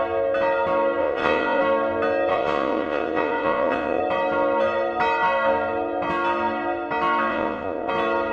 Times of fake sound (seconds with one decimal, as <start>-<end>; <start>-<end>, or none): 1.0-1.6; 2.3-4.0; 7.3-7.9